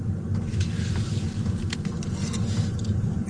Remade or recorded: recorded